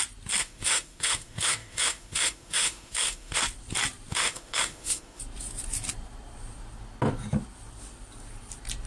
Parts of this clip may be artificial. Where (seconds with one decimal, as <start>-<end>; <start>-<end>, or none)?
0.4-3.4; 4.1-5.2